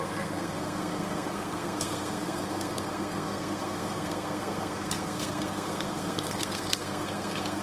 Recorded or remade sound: remade